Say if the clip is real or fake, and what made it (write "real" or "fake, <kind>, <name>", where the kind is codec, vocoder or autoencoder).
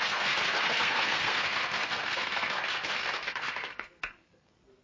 fake, codec, SNAC